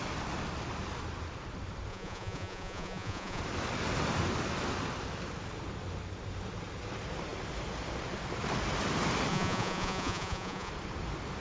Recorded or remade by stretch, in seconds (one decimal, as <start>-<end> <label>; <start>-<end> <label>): 0.0-1.9 recorded; 1.9-3.4 remade; 3.4-9.3 recorded; 9.3-10.7 remade; 10.7-11.4 recorded